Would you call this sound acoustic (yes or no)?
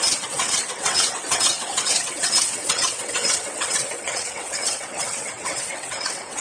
no